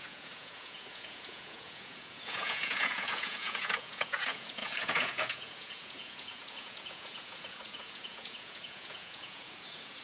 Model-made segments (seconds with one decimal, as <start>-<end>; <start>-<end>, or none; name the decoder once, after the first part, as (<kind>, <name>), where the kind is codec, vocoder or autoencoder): 0.0-10.0 (vocoder, Vocos)